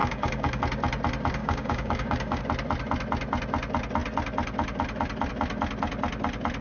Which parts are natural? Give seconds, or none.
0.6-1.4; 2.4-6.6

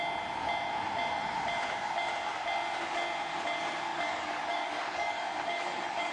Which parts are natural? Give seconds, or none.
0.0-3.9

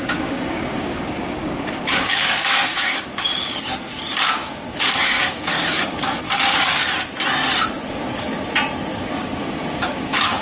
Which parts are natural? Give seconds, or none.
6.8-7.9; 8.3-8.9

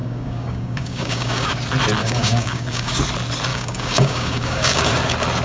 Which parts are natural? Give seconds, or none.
1.5-2.0; 3.0-3.5; 4.9-5.4